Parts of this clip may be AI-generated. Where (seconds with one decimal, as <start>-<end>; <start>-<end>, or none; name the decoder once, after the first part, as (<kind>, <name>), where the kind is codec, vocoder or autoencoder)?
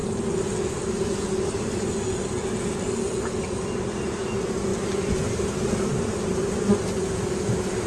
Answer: none